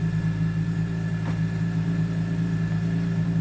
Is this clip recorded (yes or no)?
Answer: yes